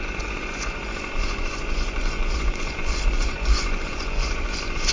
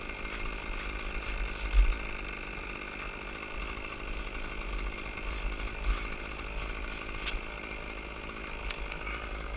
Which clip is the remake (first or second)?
first